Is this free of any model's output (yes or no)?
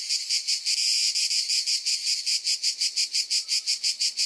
yes